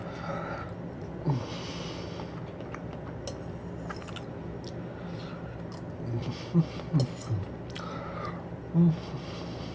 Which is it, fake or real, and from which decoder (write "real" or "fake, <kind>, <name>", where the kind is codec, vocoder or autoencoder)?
real